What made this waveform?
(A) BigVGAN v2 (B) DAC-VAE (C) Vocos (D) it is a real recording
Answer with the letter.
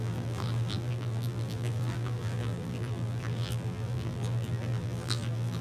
A